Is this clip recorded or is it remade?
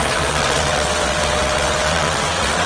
remade